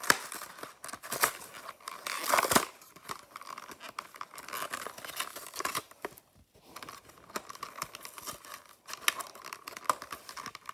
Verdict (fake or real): real